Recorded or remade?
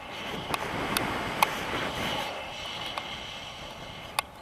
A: recorded